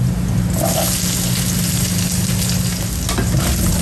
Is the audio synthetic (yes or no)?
no